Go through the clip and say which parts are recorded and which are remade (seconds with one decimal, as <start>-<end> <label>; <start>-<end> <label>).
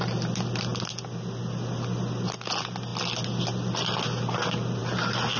0.0-5.4 recorded